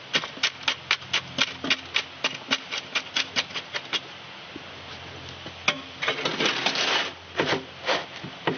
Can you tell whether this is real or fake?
real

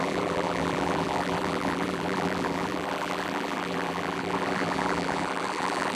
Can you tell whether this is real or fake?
fake